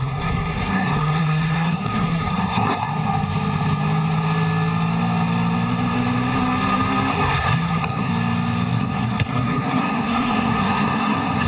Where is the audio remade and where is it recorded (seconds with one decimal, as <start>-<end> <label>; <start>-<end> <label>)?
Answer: 0.0-2.9 remade; 2.9-7.1 recorded; 7.1-8.1 remade; 8.1-8.7 recorded; 8.7-11.5 remade